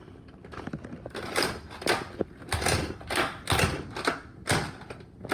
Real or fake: real